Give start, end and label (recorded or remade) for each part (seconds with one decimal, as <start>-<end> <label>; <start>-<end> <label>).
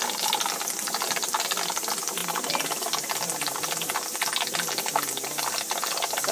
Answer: 0.0-6.3 recorded